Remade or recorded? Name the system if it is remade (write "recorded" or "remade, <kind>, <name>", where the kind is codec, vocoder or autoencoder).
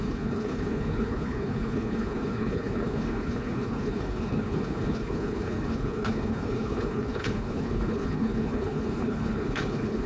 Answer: remade, codec, HILCodec